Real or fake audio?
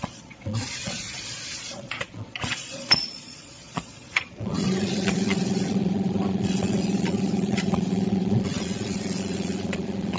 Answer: fake